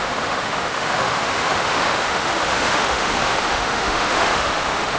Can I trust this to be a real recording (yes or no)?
no